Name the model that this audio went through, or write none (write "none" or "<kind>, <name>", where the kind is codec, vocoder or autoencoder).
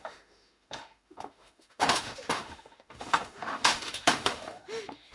autoencoder, DAC-VAE